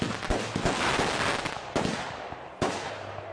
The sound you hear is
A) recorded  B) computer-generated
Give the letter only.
A